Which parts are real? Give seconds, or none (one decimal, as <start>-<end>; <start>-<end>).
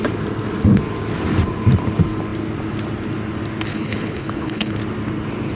0.0-3.7; 4.8-5.5